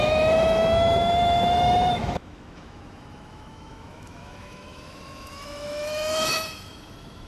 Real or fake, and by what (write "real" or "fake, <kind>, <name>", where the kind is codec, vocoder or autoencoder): fake, autoencoder, DAC-VAE